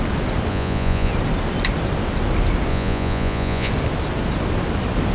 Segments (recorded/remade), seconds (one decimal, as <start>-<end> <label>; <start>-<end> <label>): 0.0-0.5 recorded; 0.5-1.1 remade; 1.1-2.7 recorded; 2.7-3.7 remade; 3.7-5.1 recorded